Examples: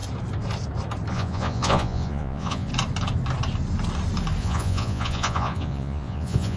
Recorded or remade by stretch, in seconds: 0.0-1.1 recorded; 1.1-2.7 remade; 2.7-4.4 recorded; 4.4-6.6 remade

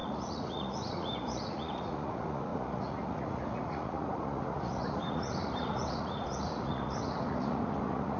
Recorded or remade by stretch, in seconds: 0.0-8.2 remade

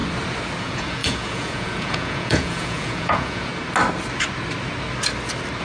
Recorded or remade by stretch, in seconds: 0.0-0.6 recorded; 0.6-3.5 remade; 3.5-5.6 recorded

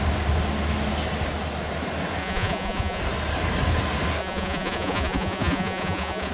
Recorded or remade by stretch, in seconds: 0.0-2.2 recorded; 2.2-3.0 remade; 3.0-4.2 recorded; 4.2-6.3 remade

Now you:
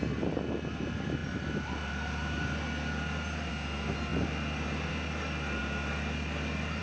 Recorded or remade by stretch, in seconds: 0.0-6.8 recorded